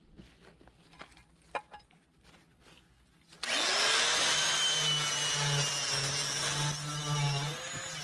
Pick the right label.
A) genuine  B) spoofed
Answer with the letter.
A